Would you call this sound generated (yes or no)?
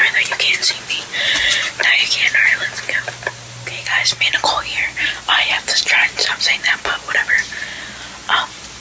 no